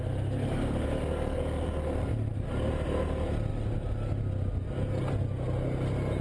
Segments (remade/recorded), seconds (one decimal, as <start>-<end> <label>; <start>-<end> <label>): 0.0-6.2 recorded